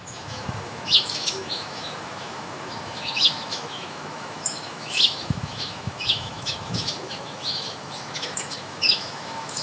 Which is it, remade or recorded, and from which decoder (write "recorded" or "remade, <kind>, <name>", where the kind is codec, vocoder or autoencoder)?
remade, autoencoder, DAC-VAE